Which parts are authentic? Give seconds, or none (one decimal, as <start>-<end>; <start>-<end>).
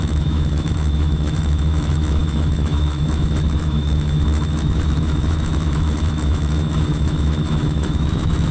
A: none